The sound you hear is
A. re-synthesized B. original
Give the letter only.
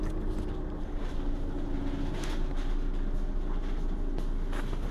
B